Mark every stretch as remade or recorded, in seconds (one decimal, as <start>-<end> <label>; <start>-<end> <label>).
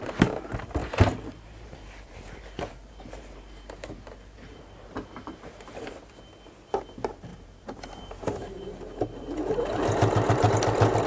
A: 0.0-0.8 recorded; 0.8-5.9 remade; 5.9-7.3 recorded; 7.3-10.5 remade; 10.5-11.1 recorded